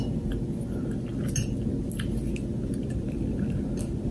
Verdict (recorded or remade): recorded